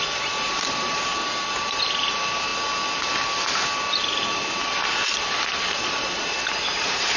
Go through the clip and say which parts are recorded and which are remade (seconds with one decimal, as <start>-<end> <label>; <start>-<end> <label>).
0.0-2.5 remade; 2.5-4.2 recorded; 4.2-7.2 remade